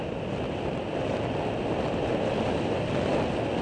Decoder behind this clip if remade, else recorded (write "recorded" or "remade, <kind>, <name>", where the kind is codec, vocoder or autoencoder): recorded